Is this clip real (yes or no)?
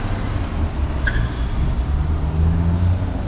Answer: yes